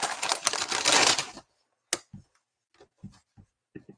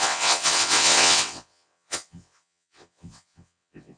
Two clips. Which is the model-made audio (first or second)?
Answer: second